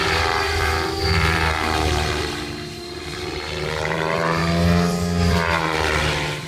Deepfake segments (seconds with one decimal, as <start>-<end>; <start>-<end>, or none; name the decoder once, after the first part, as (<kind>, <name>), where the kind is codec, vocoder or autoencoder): 0.0-4.4 (vocoder, BigVGAN v2); 5.3-6.5